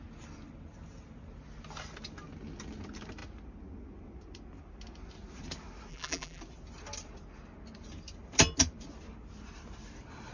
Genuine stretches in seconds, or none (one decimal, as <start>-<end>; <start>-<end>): 0.0-5.9; 6.4-10.3